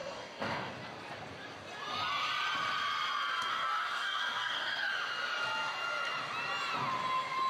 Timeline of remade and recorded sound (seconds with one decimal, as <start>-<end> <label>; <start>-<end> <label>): 0.0-0.7 remade; 0.7-3.5 recorded; 3.5-4.9 remade; 4.9-7.5 recorded